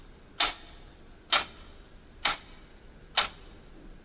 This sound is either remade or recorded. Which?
recorded